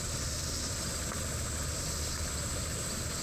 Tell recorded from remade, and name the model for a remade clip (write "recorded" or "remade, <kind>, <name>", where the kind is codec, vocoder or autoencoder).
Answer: recorded